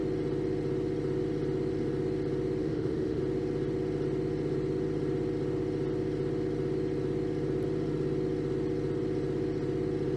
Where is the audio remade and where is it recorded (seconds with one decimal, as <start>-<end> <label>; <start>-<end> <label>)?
0.0-2.6 recorded; 2.6-3.2 remade; 3.2-10.2 recorded